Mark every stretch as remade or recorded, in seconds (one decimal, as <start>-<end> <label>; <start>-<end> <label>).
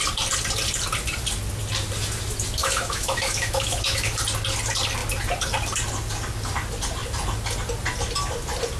0.0-2.6 recorded; 2.6-4.2 remade; 4.2-8.8 recorded